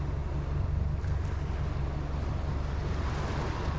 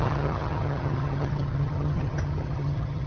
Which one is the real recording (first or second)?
first